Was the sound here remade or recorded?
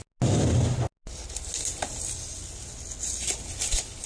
recorded